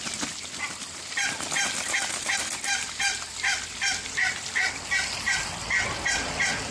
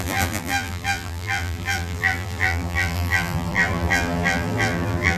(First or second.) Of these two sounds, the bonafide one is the first